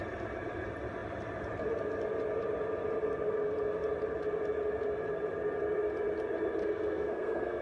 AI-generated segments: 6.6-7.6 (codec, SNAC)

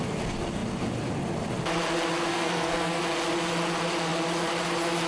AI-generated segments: 2.3-3.0 (codec, SNAC)

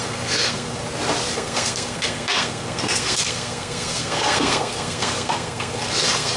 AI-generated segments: 0.0-0.8 (codec, SNAC); 1.3-6.4

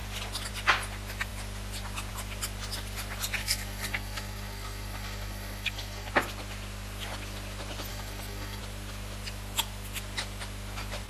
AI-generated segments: 3.4-6.1 (codec, SNAC); 7.9-8.6

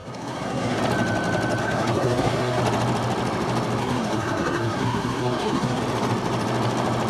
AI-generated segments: 0.0-0.8 (codec, SNAC); 1.6-2.6; 3.8-5.8

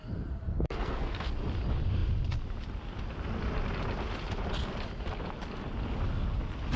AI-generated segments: 0.5-1.3 (codec, SNAC)

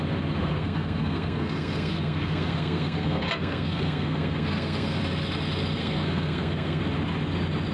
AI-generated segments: 0.4-5.0 (codec, SNAC); 5.8-6.8